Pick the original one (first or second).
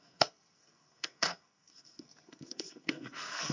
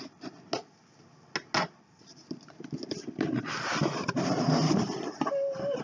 second